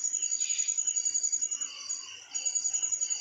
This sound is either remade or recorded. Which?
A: recorded